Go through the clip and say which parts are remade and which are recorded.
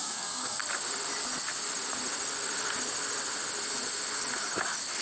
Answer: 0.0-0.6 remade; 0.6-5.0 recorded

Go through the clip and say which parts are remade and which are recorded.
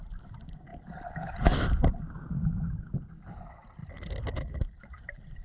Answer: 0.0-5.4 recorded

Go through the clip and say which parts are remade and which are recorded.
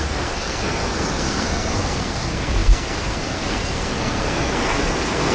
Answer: 0.0-5.3 remade